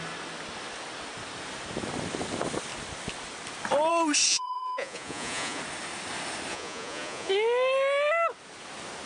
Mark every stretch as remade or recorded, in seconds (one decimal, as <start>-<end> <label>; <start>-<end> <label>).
0.0-4.3 recorded; 4.3-5.6 remade; 5.6-6.5 recorded; 6.5-7.3 remade; 7.3-9.1 recorded